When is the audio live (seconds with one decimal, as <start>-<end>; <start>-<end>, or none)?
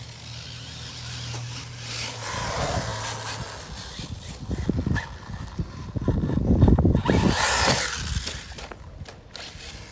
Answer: 0.0-9.9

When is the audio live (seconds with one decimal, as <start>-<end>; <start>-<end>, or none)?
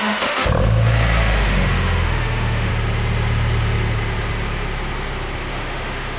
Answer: 0.5-1.2; 2.7-5.5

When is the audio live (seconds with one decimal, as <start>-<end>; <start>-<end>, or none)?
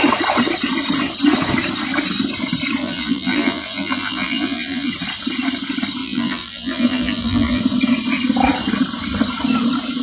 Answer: 0.0-2.8; 4.9-6.0; 7.6-10.0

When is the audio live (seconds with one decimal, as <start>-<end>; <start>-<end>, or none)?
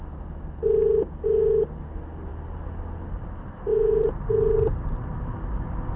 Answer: 0.0-3.7; 4.3-6.0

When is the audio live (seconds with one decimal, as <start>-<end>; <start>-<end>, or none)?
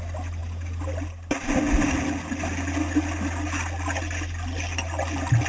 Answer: 0.0-5.5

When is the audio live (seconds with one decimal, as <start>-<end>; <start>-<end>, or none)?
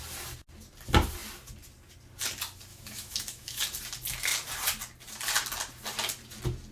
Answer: 0.0-2.7; 3.6-6.7